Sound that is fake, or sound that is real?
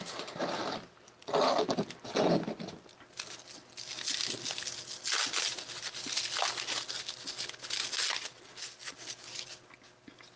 real